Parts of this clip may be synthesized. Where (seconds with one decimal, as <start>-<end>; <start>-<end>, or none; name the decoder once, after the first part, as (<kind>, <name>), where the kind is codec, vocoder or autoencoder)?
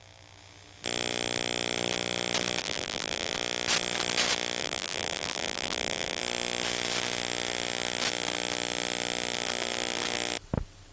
2.6-3.3 (vocoder, BigVGAN v2); 4.6-6.2